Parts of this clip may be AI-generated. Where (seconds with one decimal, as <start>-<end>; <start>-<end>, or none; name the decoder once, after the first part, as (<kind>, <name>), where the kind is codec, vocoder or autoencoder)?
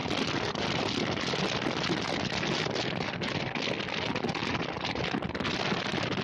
none